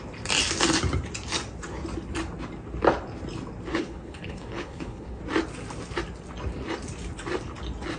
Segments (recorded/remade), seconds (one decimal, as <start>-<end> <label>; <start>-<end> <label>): 0.0-3.7 recorded; 3.7-5.2 remade; 5.2-8.0 recorded